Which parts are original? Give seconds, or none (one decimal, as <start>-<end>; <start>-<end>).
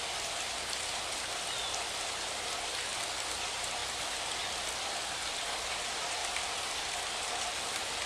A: 0.0-8.1